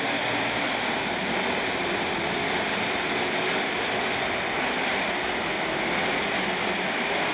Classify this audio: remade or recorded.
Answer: recorded